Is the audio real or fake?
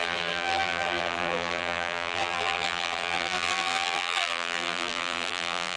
fake